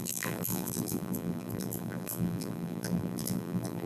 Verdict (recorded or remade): remade